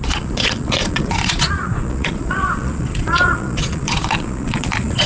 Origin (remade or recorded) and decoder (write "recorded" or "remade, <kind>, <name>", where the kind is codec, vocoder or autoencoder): remade, vocoder, Vocos